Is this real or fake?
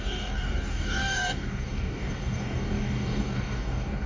fake